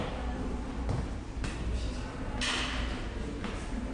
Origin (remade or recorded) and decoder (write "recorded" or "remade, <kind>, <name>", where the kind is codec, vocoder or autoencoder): recorded